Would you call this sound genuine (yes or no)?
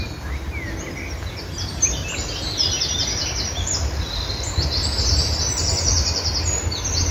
yes